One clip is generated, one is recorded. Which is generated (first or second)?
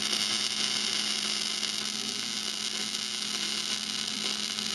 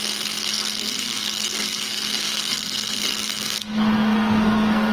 second